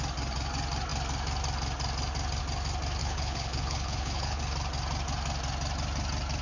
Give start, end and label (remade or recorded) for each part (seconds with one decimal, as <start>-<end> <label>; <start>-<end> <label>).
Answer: 0.0-3.0 recorded; 3.0-4.4 remade; 4.4-6.4 recorded